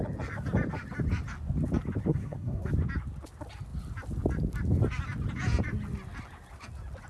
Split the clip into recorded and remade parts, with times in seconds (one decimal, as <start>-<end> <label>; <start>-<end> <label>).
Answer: 0.0-2.1 recorded; 2.1-2.7 remade; 2.7-7.1 recorded